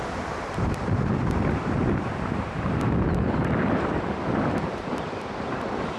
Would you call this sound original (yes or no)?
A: no